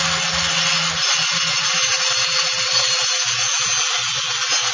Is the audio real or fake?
real